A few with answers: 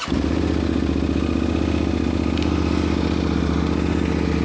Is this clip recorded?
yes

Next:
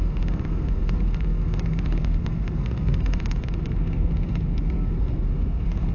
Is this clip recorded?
no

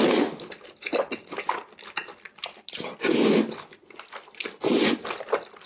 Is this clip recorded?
yes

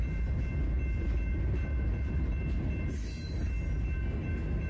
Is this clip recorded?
yes